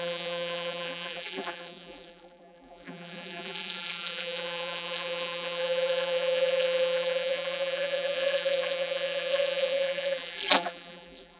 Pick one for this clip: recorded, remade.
remade